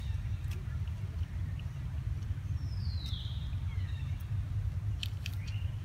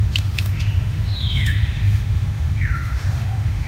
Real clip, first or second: first